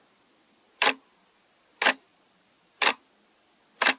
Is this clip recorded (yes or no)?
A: yes